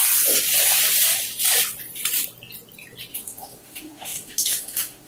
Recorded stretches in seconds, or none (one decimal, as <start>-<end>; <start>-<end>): 0.0-3.1